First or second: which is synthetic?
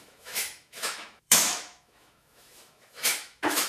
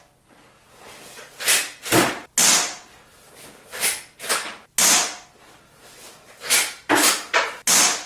first